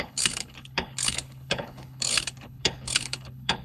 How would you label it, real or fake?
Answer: fake